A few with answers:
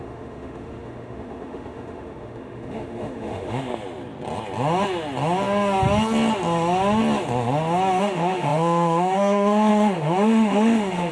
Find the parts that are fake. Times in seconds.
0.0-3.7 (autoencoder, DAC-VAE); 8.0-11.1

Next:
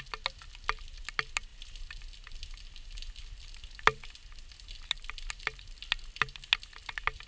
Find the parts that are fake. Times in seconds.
none

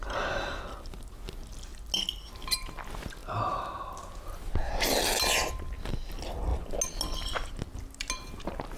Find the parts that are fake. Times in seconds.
none

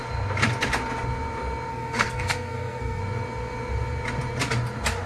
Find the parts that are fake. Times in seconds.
1.7-3.0 (codec, SNAC)